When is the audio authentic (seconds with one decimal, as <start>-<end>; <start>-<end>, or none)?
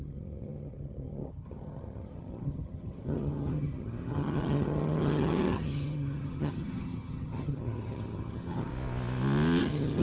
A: 8.7-9.6